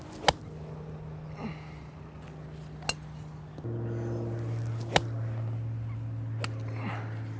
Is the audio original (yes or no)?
yes